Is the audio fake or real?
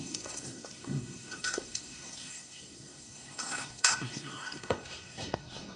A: fake